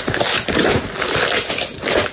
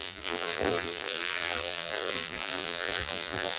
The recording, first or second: first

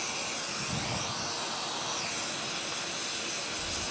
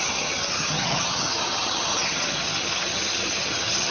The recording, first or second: first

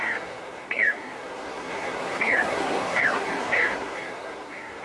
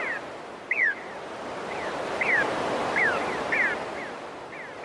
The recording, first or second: second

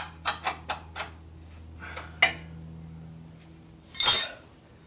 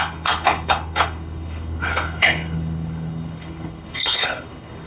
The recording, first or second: first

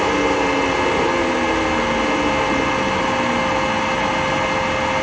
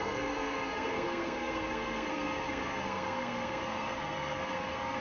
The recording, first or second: first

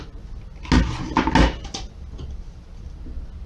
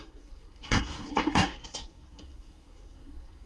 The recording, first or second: first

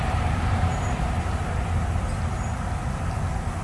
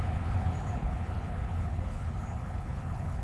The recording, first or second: first